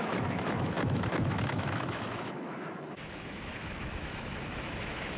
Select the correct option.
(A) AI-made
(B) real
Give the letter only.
A